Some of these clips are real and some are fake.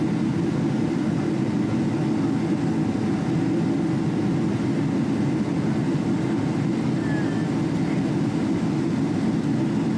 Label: real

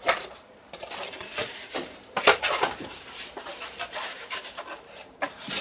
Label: fake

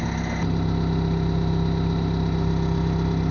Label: real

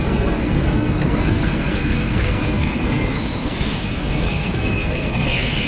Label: fake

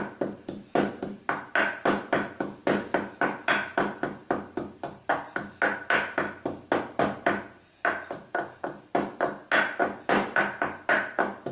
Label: real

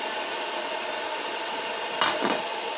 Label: real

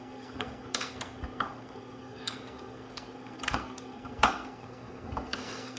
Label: fake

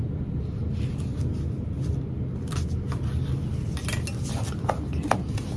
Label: real